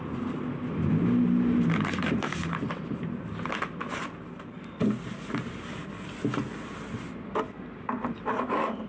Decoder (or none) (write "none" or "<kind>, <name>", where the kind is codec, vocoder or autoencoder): none